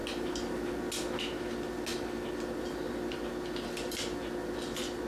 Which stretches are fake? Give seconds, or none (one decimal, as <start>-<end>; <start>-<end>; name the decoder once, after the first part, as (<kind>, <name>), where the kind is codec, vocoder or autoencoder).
none